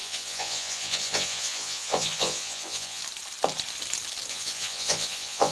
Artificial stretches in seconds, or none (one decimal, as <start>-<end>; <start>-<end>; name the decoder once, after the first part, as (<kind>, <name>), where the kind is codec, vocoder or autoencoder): 0.0-3.0 (vocoder, Vocos); 4.3-5.5